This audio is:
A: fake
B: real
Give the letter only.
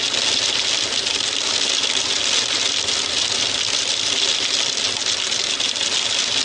B